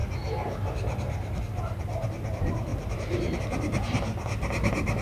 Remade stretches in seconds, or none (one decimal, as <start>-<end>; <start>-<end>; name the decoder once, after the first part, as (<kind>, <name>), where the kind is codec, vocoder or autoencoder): none